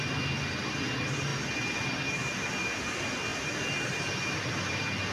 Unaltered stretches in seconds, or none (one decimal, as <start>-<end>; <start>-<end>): 0.0-5.1

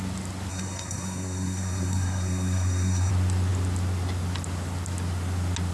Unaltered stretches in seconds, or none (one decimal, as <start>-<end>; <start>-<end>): 0.0-0.5; 3.1-5.7